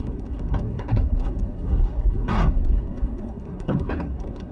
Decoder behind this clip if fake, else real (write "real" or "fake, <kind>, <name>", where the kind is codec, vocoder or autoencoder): fake, codec, SNAC